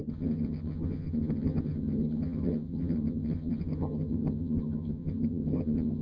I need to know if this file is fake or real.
fake